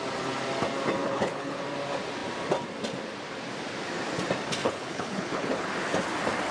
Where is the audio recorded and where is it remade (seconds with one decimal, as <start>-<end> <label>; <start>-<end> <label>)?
0.0-1.0 recorded; 1.0-1.6 remade; 1.6-4.6 recorded; 4.6-5.7 remade; 5.7-6.5 recorded